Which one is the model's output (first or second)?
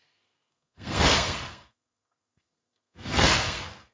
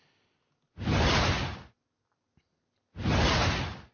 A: first